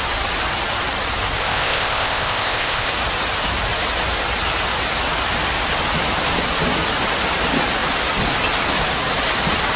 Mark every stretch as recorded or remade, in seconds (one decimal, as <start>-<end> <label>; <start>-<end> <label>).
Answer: 0.0-1.4 recorded; 1.4-2.9 remade; 2.9-9.8 recorded